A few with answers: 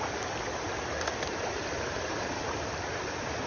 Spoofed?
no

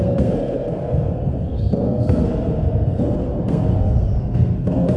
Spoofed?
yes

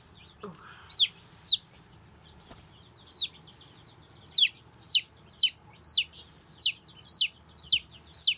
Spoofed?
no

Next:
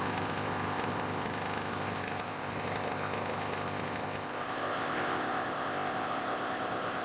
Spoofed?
yes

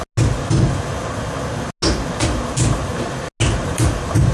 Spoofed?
no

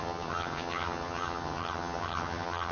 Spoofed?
yes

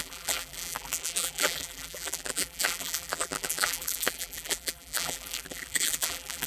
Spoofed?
yes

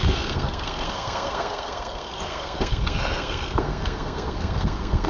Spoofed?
yes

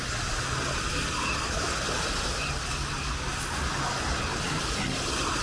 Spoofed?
no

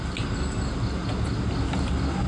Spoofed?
no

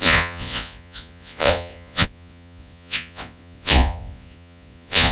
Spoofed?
yes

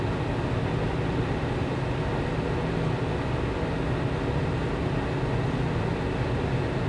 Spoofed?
no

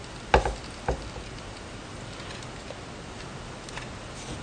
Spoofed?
no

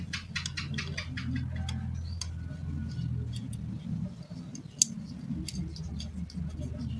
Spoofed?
no